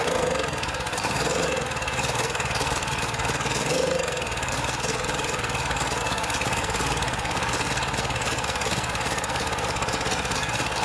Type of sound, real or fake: fake